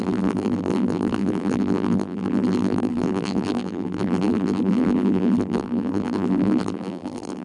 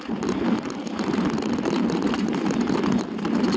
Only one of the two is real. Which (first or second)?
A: second